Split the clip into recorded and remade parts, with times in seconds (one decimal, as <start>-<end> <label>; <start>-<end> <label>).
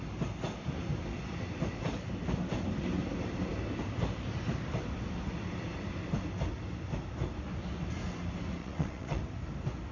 0.0-8.6 recorded; 8.6-9.2 remade; 9.2-9.9 recorded